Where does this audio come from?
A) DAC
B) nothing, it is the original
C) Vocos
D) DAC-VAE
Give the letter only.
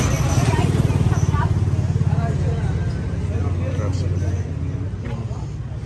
B